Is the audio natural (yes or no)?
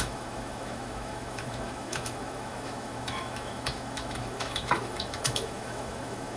no